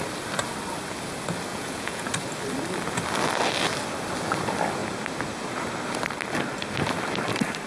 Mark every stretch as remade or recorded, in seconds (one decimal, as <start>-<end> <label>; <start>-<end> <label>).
0.0-1.5 recorded; 1.5-2.1 remade; 2.1-7.7 recorded

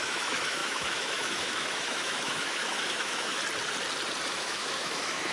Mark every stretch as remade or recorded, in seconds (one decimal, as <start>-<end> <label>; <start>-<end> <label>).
0.0-3.4 remade; 3.4-4.3 recorded; 4.3-5.3 remade

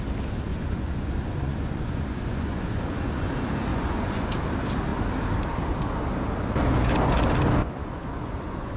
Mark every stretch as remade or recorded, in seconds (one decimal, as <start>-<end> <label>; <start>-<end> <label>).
0.0-0.5 recorded; 0.5-3.3 remade; 3.3-3.7 recorded; 3.7-4.3 remade; 4.3-7.6 recorded; 7.6-8.8 remade

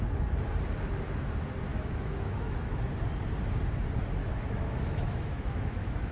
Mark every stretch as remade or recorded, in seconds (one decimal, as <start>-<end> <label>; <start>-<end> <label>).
0.0-1.7 recorded; 1.7-2.8 remade; 2.8-4.2 recorded; 4.2-6.1 remade

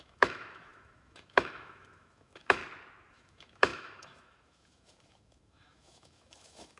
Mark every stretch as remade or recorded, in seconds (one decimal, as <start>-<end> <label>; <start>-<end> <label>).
0.0-2.6 remade; 2.6-3.1 recorded; 3.1-6.8 remade

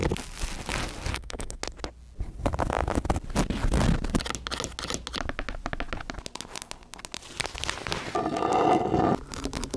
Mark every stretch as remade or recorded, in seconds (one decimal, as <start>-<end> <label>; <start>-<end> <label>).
0.0-1.1 recorded; 1.1-1.6 remade; 1.6-9.8 recorded

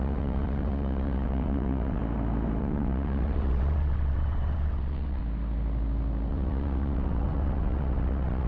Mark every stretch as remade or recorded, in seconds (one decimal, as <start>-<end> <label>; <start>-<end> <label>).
0.0-2.0 remade; 2.0-2.6 recorded; 2.6-5.2 remade; 5.2-6.3 recorded; 6.3-8.5 remade

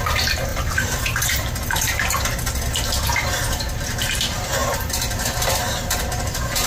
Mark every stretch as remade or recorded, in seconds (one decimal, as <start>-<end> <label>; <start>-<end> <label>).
0.0-4.6 recorded; 4.6-5.5 remade; 5.5-6.7 recorded